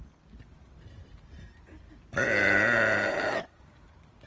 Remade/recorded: remade